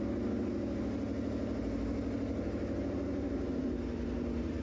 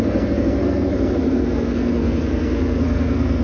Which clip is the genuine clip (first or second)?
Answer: first